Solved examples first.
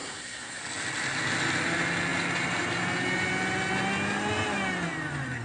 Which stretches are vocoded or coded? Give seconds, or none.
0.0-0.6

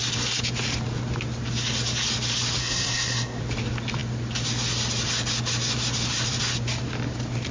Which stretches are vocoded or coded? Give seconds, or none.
2.6-3.4

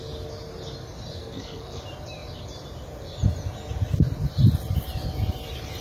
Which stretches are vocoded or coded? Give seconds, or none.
1.2-1.8

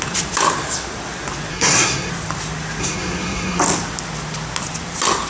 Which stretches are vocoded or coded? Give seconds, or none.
1.5-2.1; 2.8-3.6

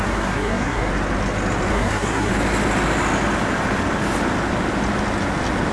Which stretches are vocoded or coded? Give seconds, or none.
0.0-0.9; 1.7-2.3

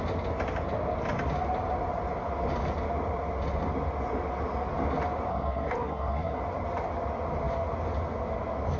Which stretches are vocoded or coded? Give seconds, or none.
5.3-6.4

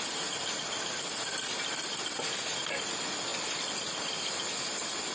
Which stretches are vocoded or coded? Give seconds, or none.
none

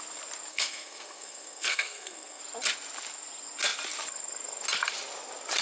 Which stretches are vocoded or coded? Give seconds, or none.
0.5-2.4